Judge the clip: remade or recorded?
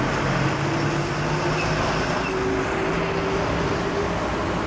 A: recorded